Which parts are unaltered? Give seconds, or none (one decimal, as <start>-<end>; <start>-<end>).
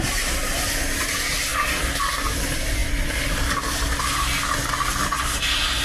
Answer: 0.0-5.8